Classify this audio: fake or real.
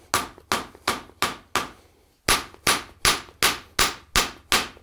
real